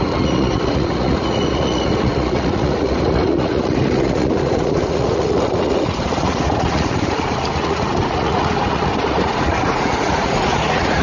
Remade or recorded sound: remade